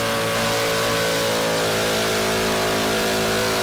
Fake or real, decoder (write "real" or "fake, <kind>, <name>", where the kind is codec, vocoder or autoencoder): real